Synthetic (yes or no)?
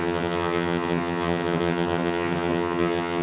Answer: yes